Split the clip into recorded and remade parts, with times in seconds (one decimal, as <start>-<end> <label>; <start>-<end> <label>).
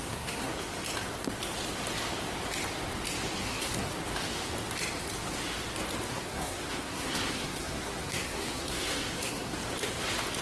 0.0-0.5 remade; 0.5-3.4 recorded; 3.4-3.9 remade; 3.9-6.1 recorded; 6.1-9.6 remade; 9.6-10.4 recorded